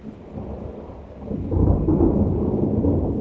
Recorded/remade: recorded